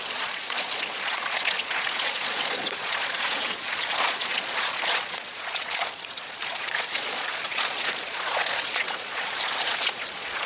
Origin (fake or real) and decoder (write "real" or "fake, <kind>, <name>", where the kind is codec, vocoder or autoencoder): fake, vocoder, Vocos